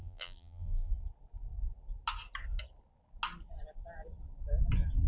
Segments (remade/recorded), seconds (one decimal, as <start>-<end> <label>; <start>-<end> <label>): 0.0-0.9 remade; 0.9-5.1 recorded